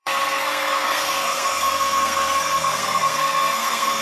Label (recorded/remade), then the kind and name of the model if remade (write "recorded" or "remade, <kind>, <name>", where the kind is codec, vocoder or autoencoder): remade, codec, SNAC